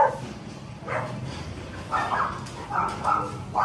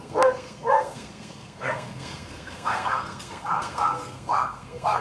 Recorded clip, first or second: first